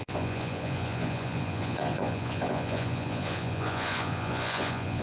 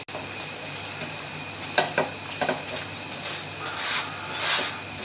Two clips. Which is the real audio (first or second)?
second